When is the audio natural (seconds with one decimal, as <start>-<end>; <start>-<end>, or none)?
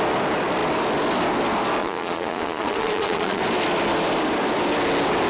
0.0-1.8; 3.4-5.3